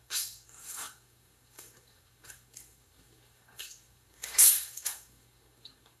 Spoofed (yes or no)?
yes